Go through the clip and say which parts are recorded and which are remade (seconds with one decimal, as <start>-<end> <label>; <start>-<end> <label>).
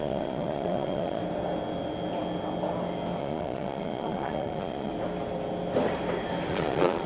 0.0-1.2 remade; 1.2-3.2 recorded; 3.2-4.9 remade; 4.9-6.5 recorded; 6.5-7.1 remade